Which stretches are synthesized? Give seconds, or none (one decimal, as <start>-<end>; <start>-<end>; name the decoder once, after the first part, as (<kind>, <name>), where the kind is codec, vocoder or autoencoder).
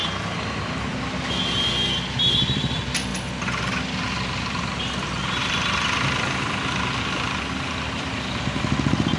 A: 0.0-9.2 (vocoder, BigVGAN v2)